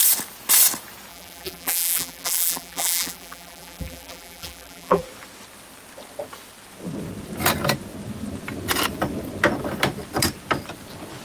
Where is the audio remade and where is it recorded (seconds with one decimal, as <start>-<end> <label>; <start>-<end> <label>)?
0.0-1.1 recorded; 1.1-5.0 remade; 5.0-11.2 recorded